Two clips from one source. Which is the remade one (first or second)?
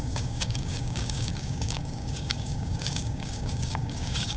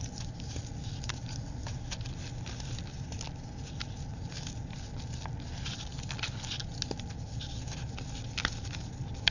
first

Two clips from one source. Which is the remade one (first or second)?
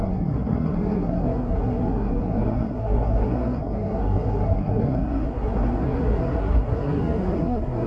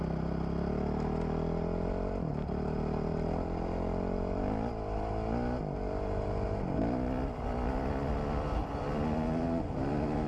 first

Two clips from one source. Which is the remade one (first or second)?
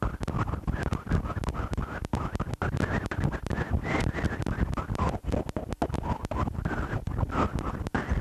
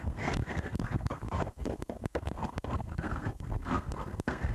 second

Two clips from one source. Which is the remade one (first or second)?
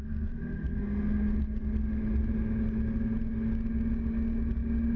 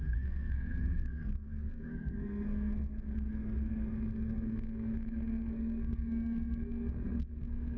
second